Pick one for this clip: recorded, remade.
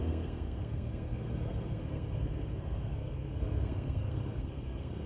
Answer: remade